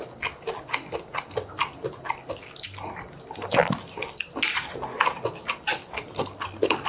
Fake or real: real